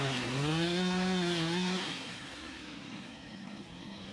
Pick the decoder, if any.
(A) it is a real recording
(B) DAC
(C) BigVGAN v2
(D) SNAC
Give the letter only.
D